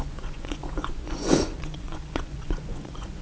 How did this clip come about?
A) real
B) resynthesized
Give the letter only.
B